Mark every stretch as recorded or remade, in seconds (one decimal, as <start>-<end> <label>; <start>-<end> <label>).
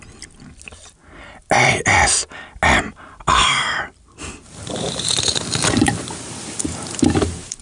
0.0-3.4 recorded; 3.4-7.6 remade